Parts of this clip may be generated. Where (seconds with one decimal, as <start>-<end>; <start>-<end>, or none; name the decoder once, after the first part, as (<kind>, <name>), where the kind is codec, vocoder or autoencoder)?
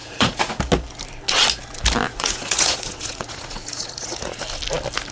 0.0-0.5 (vocoder, Vocos); 2.1-4.4